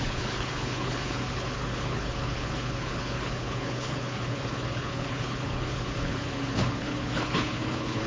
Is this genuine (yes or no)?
no